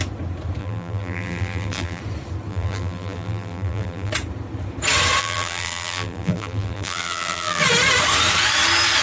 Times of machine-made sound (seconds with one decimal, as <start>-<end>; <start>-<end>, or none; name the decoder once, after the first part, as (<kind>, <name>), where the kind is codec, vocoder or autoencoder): 0.6-2.0 (vocoder, BigVGAN v2); 2.5-4.1; 5.2-7.6